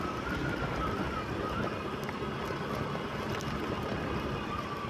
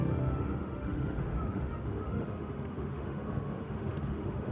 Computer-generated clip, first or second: second